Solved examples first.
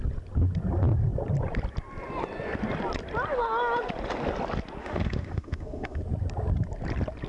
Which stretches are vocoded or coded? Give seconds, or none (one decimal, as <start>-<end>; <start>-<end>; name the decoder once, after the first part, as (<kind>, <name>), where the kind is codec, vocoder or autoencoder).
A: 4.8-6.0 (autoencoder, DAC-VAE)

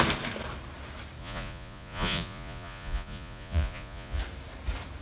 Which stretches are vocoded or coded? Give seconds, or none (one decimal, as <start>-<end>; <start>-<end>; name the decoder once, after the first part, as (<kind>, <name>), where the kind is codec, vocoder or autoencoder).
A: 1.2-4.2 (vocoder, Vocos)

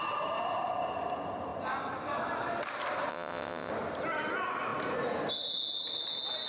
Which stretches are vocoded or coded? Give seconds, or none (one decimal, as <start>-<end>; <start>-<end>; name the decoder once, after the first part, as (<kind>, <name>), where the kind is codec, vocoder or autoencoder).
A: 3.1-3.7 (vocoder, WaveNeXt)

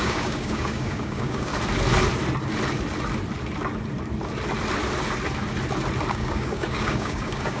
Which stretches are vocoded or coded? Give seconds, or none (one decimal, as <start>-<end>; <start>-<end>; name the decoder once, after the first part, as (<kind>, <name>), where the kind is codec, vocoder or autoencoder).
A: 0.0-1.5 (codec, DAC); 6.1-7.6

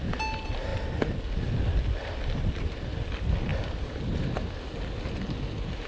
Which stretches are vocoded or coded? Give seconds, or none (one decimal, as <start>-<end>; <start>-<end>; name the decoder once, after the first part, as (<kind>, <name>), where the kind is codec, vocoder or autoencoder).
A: none

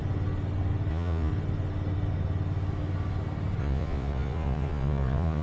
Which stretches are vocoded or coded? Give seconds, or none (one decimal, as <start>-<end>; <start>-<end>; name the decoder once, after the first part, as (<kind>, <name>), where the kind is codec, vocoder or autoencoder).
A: 0.9-1.3 (vocoder, Vocos); 3.6-5.4